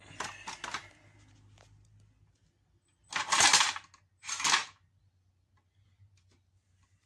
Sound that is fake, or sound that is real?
real